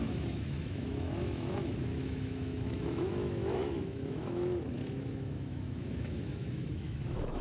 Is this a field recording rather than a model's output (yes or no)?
no